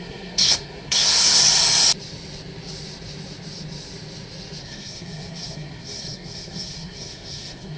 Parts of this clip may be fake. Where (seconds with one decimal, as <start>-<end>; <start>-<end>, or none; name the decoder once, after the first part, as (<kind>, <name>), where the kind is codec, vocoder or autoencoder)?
0.0-1.4 (codec, SNAC); 4.6-7.8